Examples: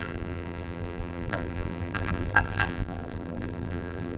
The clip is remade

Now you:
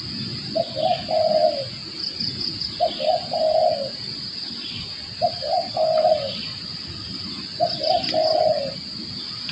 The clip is recorded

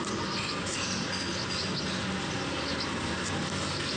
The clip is recorded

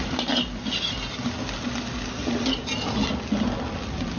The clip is recorded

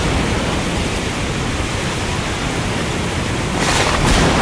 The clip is recorded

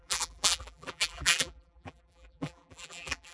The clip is remade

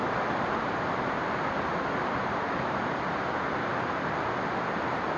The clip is recorded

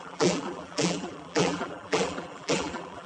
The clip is remade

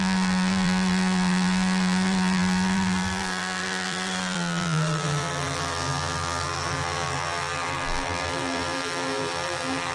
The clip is remade